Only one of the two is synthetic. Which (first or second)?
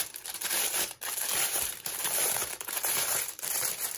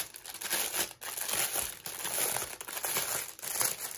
first